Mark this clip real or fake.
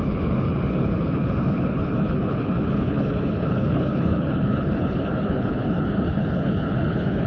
fake